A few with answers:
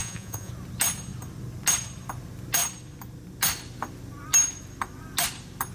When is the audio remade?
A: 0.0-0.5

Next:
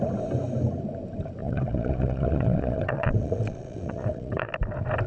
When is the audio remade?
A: 1.4-4.5

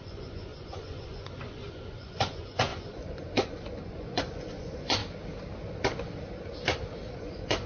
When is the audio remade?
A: 0.0-5.0; 7.1-7.7

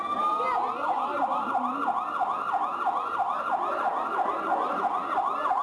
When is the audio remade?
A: none